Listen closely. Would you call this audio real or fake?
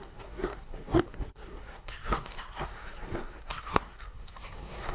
fake